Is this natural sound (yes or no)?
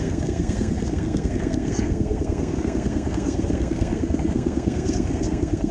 no